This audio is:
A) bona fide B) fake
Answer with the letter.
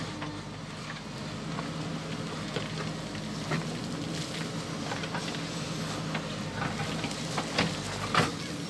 A